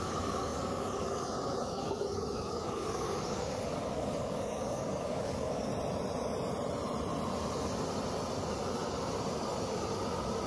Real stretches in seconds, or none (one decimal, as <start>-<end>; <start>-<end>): 5.7-10.5

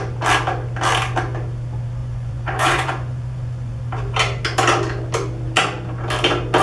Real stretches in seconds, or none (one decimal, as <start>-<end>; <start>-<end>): 0.0-2.0; 3.8-6.6

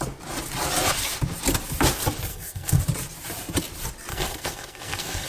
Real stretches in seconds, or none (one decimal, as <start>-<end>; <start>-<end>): 0.0-2.3; 2.8-4.1

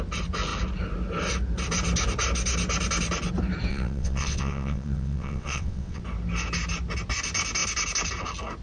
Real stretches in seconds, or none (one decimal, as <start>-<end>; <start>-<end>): 0.0-3.7; 6.0-8.6

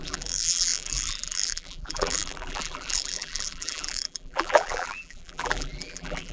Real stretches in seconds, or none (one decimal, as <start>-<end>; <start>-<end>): none

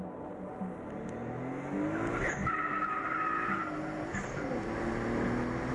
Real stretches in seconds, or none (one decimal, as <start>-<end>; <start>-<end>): 0.0-5.7